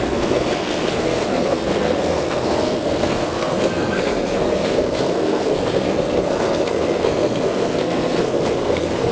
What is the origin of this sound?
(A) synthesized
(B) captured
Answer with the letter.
A